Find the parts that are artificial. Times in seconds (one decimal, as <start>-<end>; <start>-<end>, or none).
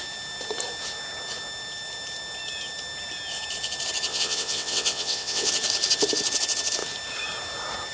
4.1-5.5